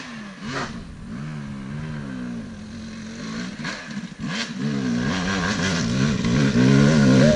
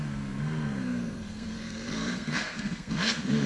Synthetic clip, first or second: second